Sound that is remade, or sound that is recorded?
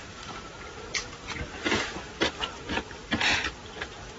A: remade